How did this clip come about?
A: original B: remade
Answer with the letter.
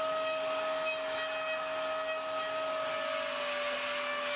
A